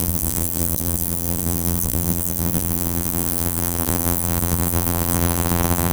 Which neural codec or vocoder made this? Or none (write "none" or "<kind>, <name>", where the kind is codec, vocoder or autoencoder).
vocoder, BigVGAN v2